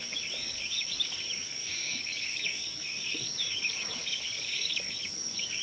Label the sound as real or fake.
fake